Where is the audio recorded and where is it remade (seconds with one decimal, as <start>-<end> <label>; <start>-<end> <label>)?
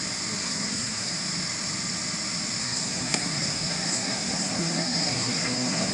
0.0-0.4 recorded; 0.4-1.1 remade; 1.1-2.6 recorded; 2.6-5.9 remade